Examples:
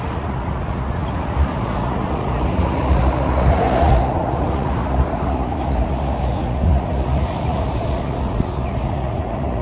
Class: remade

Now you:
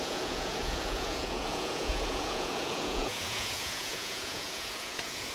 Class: remade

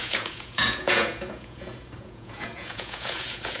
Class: remade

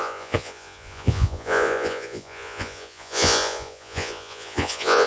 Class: remade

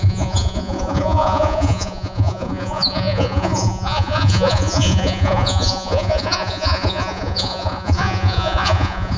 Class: remade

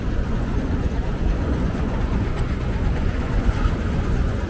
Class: remade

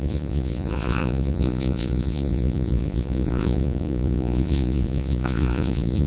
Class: remade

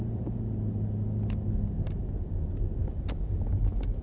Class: recorded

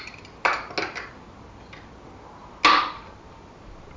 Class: recorded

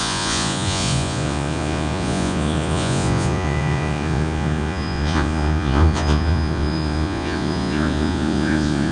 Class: remade